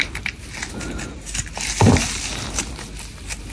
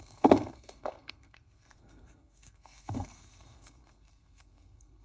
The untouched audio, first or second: first